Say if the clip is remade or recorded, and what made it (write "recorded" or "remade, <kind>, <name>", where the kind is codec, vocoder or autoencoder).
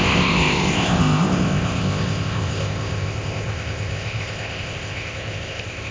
remade, codec, ZipCodec